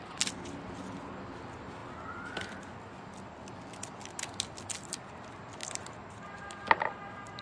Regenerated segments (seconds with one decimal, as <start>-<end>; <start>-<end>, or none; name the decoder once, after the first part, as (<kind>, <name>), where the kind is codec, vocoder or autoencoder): none